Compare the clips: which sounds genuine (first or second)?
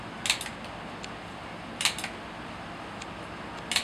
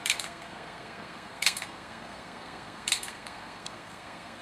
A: first